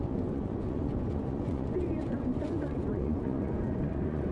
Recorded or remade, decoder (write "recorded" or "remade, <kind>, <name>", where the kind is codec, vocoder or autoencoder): remade, vocoder, Vocos